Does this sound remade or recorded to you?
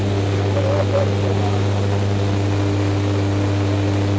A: recorded